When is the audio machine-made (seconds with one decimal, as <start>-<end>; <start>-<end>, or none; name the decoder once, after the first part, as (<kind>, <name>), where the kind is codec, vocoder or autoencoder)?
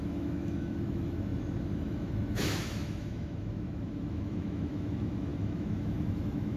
0.0-6.6 (autoencoder, DAC-VAE)